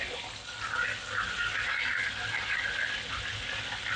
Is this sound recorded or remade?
recorded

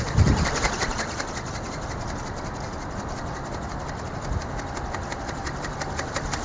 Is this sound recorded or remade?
recorded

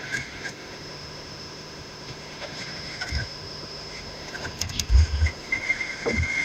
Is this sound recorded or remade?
remade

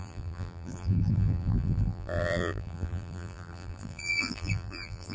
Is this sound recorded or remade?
remade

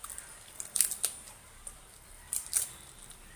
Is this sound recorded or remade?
remade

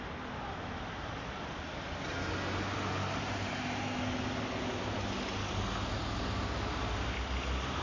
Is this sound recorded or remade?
recorded